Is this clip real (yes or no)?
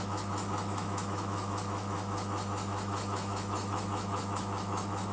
no